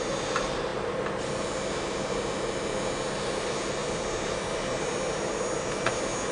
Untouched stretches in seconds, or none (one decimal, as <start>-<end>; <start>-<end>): 0.0-6.3